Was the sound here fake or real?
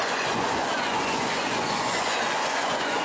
fake